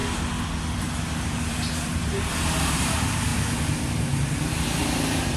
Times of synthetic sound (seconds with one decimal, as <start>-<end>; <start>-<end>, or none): 0.8-3.3; 4.8-5.4

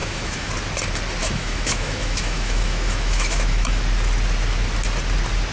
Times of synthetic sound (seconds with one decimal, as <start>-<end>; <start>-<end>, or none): 0.0-0.5; 1.2-3.8

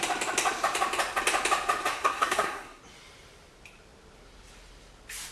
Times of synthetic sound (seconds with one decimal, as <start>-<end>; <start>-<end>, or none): 1.9-2.8